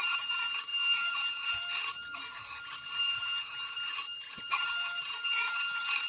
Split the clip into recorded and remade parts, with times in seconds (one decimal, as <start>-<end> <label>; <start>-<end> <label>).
0.0-6.1 remade